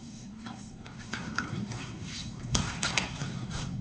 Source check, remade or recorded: remade